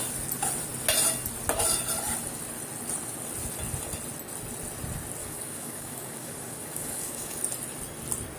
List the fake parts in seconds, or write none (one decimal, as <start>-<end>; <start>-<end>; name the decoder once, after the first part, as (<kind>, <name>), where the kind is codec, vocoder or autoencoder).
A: 5.2-7.4 (codec, DAC)